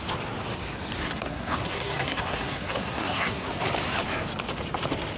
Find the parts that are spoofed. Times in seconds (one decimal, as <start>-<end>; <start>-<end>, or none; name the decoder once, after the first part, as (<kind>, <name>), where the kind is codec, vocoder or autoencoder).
1.0-3.5 (codec, SNAC)